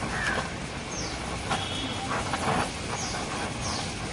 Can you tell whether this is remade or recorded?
recorded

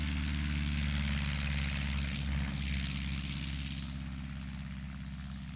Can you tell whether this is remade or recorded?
recorded